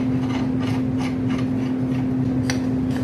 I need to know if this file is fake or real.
real